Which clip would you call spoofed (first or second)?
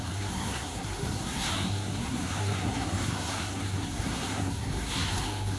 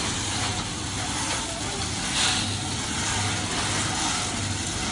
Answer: first